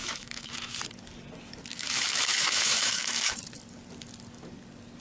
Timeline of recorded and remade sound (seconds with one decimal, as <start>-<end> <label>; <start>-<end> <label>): 0.0-0.8 remade; 0.8-1.7 recorded; 1.7-3.3 remade; 3.3-5.0 recorded